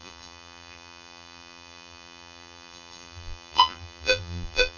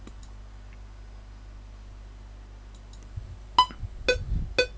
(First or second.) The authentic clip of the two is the second